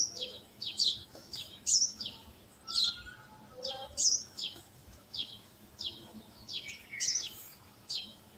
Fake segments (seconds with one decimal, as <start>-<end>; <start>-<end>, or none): 0.0-2.6; 3.7-8.4